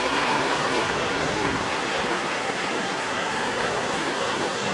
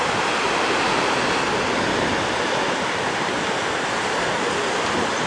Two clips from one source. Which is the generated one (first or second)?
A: first